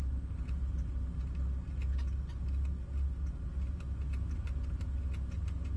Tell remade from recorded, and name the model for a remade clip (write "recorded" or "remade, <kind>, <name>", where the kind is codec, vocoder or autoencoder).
recorded